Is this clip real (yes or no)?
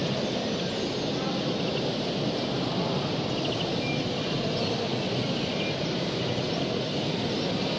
yes